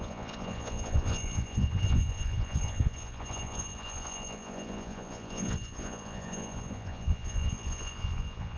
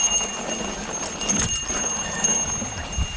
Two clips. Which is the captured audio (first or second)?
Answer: second